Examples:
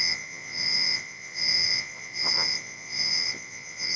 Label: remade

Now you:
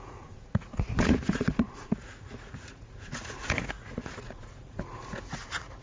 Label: remade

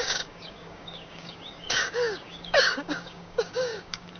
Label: remade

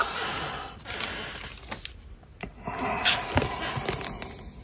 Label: recorded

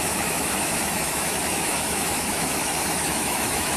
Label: remade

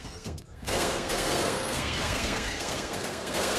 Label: remade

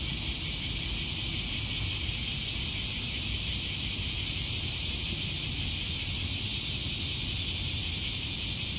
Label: recorded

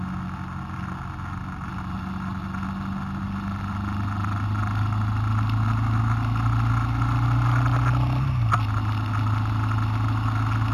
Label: recorded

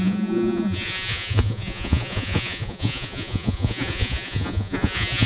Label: remade